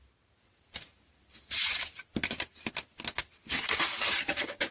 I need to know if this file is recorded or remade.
recorded